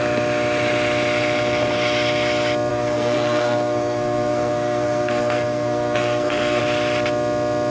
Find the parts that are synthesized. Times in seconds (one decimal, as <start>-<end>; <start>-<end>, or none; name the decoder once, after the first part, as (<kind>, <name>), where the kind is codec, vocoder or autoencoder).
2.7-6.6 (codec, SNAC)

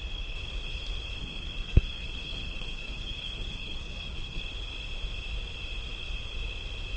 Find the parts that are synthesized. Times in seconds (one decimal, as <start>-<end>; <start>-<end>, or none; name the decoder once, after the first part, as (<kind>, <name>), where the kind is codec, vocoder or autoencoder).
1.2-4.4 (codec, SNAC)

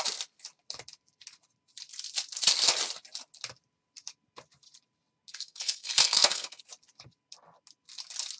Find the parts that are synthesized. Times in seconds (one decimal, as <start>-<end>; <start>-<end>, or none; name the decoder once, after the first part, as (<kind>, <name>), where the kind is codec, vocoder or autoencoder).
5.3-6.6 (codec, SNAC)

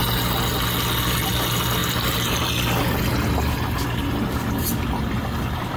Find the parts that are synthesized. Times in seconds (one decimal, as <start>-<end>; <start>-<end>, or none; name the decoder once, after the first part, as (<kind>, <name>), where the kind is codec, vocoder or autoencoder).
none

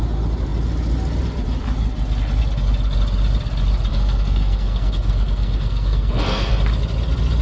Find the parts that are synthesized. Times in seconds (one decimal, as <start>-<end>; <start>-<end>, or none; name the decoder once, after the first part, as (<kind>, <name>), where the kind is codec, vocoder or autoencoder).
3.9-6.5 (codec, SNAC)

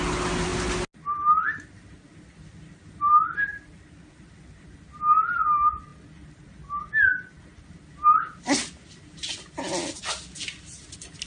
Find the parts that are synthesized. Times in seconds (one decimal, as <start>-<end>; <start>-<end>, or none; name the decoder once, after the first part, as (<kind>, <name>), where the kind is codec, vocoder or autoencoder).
none